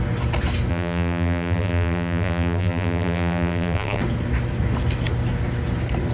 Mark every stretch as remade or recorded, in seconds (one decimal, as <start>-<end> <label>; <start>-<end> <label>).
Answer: 0.0-0.7 recorded; 0.7-4.0 remade; 4.0-6.1 recorded